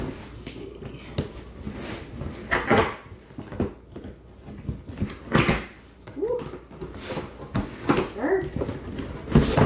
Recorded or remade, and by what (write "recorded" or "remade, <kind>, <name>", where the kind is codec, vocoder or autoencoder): recorded